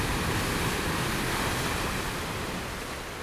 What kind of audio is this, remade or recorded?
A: recorded